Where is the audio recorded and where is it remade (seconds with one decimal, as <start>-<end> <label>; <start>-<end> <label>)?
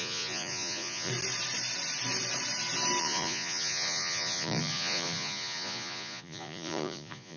0.0-1.1 remade; 1.1-3.0 recorded; 3.0-7.4 remade